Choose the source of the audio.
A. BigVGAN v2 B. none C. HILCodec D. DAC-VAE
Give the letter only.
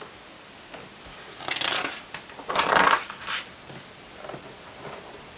B